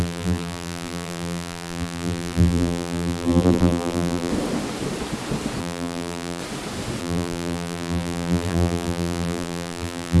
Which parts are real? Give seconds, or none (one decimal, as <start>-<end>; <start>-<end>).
4.3-5.6; 6.4-7.0